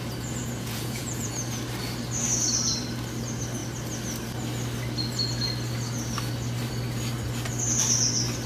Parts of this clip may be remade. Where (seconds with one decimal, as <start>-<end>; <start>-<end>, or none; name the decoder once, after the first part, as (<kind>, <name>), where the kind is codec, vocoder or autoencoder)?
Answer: 0.4-1.3 (vocoder, Vocos)

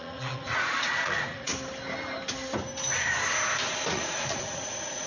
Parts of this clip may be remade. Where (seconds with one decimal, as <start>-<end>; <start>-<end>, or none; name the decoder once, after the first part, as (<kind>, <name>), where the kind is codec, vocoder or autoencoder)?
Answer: 0.0-1.5 (vocoder, Vocos); 3.9-5.1